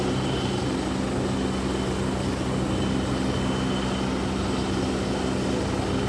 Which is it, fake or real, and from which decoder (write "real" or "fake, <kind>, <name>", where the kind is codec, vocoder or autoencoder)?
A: real